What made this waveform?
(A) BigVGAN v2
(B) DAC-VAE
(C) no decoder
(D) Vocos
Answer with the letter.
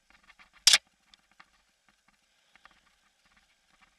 C